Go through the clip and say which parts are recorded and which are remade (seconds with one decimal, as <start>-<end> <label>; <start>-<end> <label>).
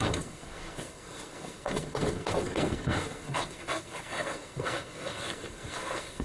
0.0-6.2 remade